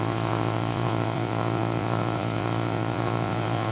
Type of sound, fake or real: fake